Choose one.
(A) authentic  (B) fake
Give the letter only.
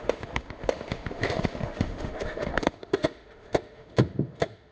B